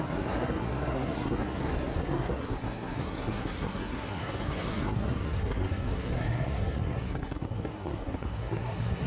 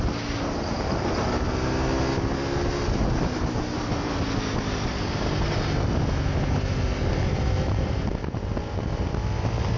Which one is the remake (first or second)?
first